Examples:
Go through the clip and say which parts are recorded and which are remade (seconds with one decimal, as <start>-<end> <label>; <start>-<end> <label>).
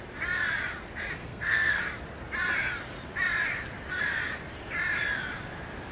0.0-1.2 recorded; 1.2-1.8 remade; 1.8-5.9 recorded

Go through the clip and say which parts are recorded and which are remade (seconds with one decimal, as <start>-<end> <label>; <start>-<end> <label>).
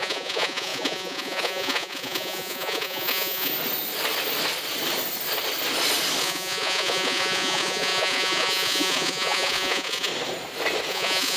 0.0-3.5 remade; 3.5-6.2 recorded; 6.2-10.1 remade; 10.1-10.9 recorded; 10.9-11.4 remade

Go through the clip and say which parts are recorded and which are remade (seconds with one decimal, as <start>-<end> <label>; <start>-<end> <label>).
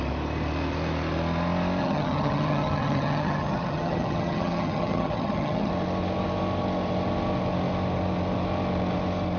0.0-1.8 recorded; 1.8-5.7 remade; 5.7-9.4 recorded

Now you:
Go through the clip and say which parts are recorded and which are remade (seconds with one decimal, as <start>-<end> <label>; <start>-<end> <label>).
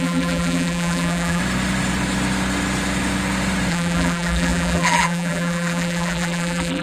0.0-1.4 remade; 1.4-3.7 recorded; 3.7-6.8 remade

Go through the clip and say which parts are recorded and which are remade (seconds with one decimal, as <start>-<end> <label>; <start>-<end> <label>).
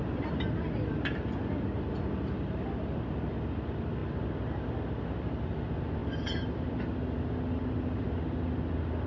0.0-9.1 recorded